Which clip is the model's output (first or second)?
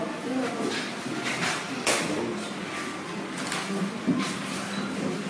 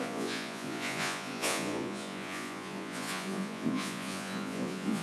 second